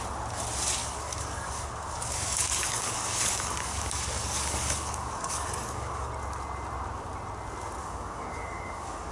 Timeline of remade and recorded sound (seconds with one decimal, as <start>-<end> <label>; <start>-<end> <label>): 0.0-0.8 recorded; 0.8-6.1 remade; 6.1-7.8 recorded; 7.8-9.1 remade